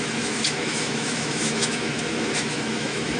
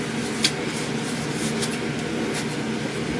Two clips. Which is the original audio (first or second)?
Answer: second